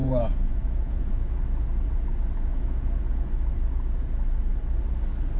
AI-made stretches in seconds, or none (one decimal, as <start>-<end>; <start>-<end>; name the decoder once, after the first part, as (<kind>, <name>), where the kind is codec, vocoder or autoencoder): 0.0-1.1 (vocoder, Vocos); 2.5-3.3